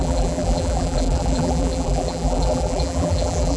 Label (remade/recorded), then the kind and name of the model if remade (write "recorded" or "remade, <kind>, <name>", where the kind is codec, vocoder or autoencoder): remade, vocoder, BigVGAN v2